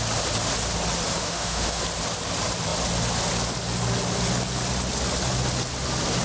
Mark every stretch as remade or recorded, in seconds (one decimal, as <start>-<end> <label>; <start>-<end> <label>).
0.0-1.2 recorded; 1.2-1.8 remade; 1.8-6.2 recorded